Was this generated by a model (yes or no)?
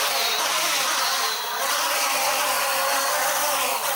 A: no